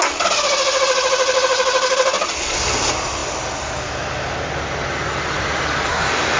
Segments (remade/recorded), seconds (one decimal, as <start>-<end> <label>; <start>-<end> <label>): 0.0-5.9 recorded; 5.9-6.4 remade